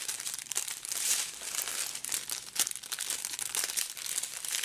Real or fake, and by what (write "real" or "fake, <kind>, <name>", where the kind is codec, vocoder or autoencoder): real